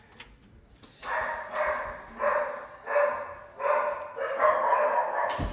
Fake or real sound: real